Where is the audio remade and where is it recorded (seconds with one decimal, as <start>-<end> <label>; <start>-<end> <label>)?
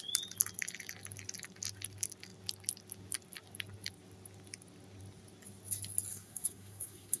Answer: 0.0-6.1 recorded; 6.1-7.2 remade